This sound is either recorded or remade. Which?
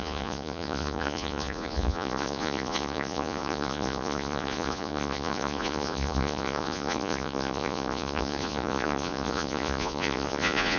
remade